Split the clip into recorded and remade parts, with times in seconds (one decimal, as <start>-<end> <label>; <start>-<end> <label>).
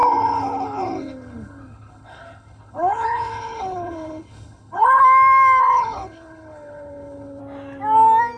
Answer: 0.0-5.0 remade; 5.0-5.6 recorded; 5.6-7.4 remade; 7.4-8.4 recorded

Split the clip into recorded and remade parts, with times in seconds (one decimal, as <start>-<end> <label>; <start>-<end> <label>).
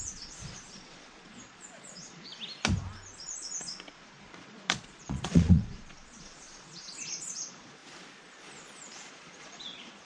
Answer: 0.0-2.3 remade; 2.3-3.9 recorded; 3.9-7.8 remade; 7.8-9.1 recorded; 9.1-10.1 remade